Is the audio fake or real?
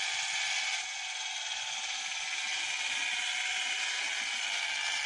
real